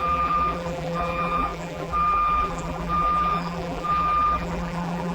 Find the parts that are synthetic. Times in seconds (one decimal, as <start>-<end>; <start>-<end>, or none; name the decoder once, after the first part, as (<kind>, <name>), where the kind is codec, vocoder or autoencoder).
0.0-5.1 (vocoder, BigVGAN v2)